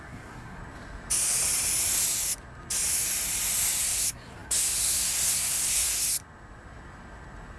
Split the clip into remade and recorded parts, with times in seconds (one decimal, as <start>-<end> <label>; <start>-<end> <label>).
0.0-0.6 remade; 0.6-3.8 recorded; 3.8-6.1 remade; 6.1-7.6 recorded